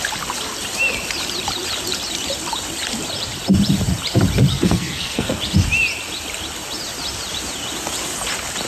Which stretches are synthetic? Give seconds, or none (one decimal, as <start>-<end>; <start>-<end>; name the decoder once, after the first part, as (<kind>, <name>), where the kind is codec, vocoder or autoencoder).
4.5-5.4 (codec, SNAC)